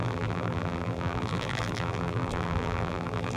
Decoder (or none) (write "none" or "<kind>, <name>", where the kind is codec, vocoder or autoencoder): vocoder, BigVGAN v2